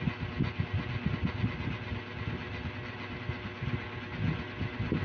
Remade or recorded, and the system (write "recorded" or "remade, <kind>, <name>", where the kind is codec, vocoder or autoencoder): recorded